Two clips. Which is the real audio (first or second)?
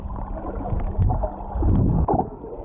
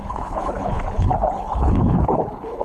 first